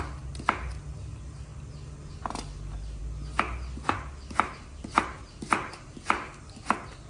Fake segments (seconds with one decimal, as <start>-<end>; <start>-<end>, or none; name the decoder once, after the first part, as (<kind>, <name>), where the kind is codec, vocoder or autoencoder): none